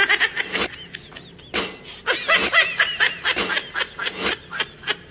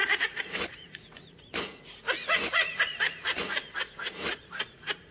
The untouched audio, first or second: first